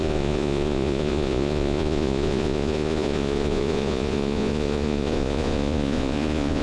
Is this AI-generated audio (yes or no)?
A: yes